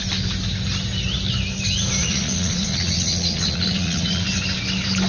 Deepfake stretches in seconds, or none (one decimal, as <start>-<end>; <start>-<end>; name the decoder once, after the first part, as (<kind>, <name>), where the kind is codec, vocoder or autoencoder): 2.0-4.3 (vocoder, Vocos)